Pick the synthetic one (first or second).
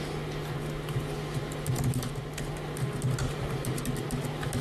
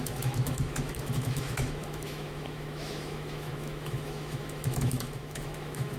second